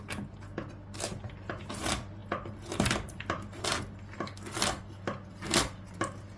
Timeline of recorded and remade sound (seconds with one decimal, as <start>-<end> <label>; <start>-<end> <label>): 0.0-6.4 recorded